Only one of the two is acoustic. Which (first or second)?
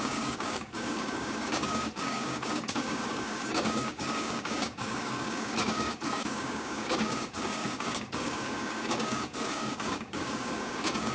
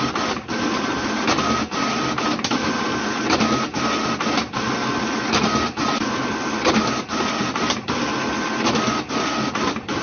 second